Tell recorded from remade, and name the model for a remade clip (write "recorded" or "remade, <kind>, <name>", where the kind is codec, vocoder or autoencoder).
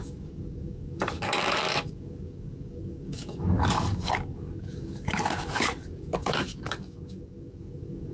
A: remade, codec, DAC